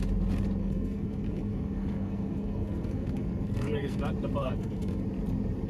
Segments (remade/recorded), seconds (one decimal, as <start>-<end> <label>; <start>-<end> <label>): 0.0-0.6 recorded; 0.6-4.0 remade; 4.0-4.4 recorded; 4.4-5.0 remade; 5.0-5.7 recorded